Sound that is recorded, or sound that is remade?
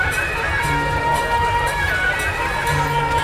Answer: recorded